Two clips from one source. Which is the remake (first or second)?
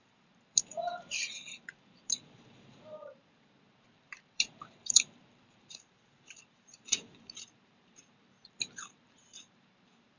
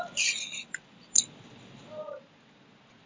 first